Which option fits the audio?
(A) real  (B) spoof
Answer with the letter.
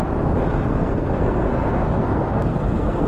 B